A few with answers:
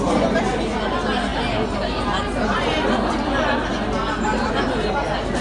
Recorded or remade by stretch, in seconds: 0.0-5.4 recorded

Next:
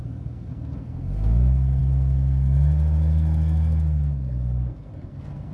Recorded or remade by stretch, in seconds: 0.0-5.5 remade